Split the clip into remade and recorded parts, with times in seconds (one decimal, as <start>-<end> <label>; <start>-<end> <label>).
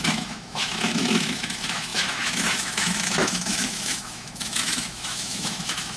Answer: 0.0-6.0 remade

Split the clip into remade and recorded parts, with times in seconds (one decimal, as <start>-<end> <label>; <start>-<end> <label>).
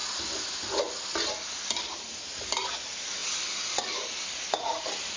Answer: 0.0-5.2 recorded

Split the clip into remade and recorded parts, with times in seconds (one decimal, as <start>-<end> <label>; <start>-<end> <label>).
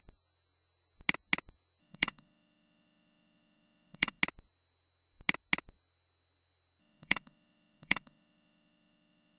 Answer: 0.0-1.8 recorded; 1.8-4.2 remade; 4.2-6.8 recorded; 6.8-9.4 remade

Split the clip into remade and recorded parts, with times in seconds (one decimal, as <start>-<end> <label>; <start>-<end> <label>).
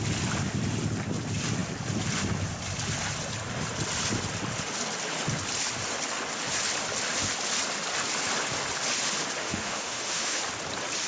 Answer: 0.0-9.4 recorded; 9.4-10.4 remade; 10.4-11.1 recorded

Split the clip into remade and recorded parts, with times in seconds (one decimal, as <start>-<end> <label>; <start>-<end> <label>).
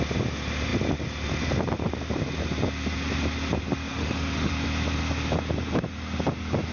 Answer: 0.0-3.9 recorded; 3.9-4.5 remade; 4.5-6.7 recorded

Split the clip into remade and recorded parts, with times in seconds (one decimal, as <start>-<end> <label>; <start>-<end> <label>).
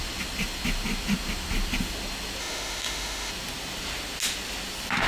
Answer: 0.0-2.4 recorded; 2.4-3.3 remade; 3.3-5.1 recorded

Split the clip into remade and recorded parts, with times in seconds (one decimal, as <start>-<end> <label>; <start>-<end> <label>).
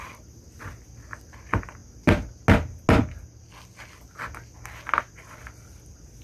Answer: 0.0-6.2 recorded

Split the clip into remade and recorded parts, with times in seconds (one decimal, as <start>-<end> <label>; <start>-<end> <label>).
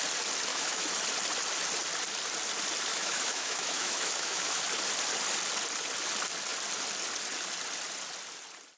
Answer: 0.0-0.5 recorded; 0.5-1.0 remade; 1.0-2.9 recorded; 2.9-4.6 remade; 4.6-8.8 recorded